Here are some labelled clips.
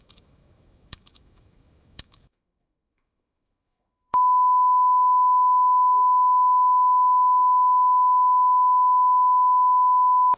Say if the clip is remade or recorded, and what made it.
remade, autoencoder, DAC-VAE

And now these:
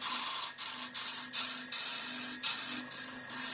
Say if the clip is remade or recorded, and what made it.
recorded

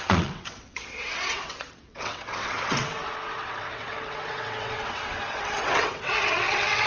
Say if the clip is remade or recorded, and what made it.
remade, vocoder, WaveNeXt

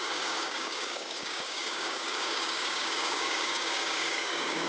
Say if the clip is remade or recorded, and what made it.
remade, codec, DAC